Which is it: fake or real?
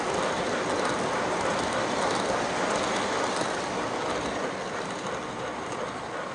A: real